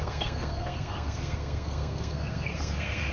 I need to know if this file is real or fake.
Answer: fake